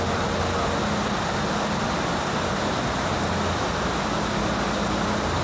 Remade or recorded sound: recorded